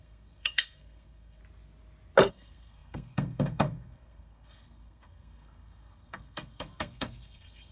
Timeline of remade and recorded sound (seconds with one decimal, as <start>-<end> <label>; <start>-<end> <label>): 0.0-1.4 remade; 1.4-2.3 recorded; 2.3-7.7 remade